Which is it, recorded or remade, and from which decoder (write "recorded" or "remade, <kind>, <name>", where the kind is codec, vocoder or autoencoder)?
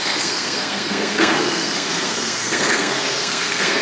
remade, codec, SNAC